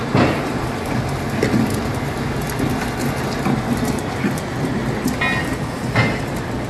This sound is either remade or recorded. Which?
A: recorded